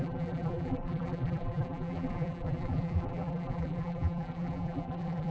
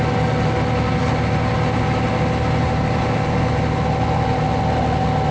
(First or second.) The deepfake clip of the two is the first